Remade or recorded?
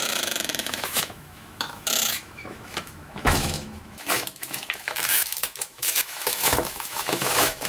remade